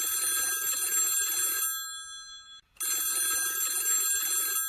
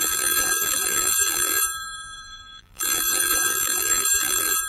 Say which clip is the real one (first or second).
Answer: first